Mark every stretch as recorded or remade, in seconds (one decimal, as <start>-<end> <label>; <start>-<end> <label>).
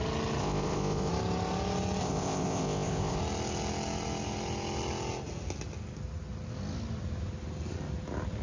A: 0.0-0.4 recorded; 0.4-1.1 remade; 1.1-2.0 recorded; 2.0-3.2 remade; 3.2-8.4 recorded